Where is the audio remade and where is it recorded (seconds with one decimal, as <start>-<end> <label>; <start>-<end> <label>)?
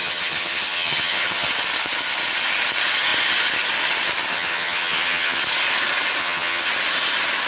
0.0-1.5 remade; 1.5-4.3 recorded; 4.3-5.4 remade; 5.4-6.2 recorded; 6.2-6.7 remade; 6.7-7.5 recorded